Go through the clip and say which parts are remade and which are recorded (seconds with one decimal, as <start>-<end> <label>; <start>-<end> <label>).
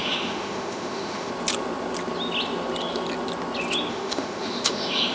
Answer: 0.0-1.3 remade; 1.3-3.9 recorded; 3.9-5.1 remade